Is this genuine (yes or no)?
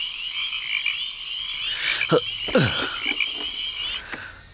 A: yes